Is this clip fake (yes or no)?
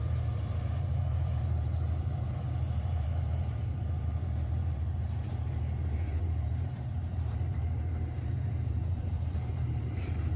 yes